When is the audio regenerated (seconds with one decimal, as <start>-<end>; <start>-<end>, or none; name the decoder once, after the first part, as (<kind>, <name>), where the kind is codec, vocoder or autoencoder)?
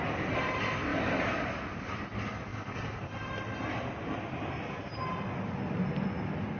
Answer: none